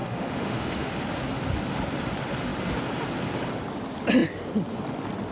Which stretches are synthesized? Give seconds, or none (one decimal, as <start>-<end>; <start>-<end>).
0.0-0.9

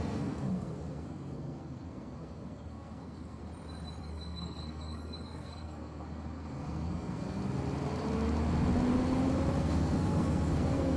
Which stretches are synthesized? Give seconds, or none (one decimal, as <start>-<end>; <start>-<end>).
0.0-3.4; 4.0-7.4; 9.6-11.0